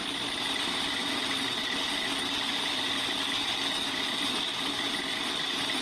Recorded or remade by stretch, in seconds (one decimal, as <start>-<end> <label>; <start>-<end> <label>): 0.0-5.8 recorded